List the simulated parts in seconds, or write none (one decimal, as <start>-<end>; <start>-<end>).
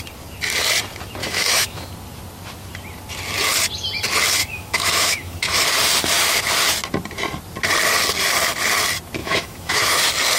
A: 1.2-1.9; 4.4-5.6; 9.2-10.0